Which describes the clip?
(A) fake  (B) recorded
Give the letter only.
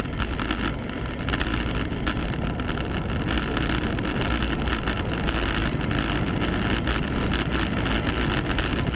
B